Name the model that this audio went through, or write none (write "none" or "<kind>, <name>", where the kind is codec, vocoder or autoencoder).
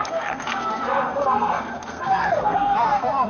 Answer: codec, SNAC